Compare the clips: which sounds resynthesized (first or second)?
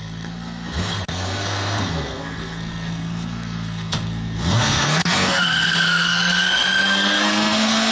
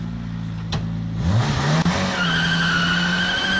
first